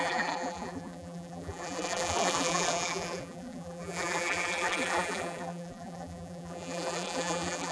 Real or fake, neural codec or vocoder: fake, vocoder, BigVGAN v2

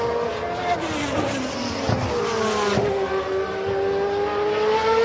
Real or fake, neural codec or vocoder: real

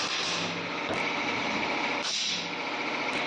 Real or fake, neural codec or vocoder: real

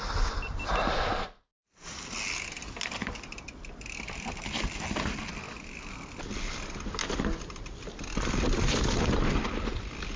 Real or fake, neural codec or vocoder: real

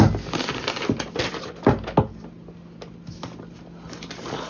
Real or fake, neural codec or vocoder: real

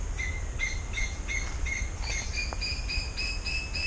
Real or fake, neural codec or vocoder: real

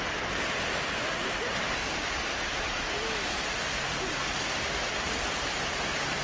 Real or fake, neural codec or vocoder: real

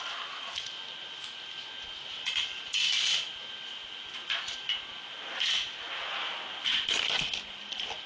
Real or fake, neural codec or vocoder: real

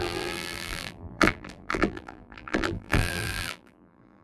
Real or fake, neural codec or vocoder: fake, vocoder, BigVGAN v2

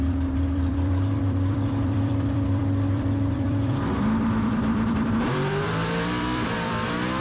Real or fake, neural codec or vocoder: fake, vocoder, BigVGAN v2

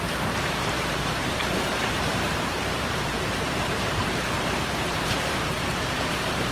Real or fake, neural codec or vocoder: fake, vocoder, BigVGAN v2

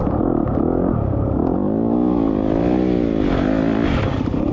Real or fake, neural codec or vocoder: real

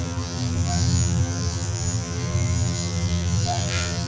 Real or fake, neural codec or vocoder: fake, vocoder, BigVGAN v2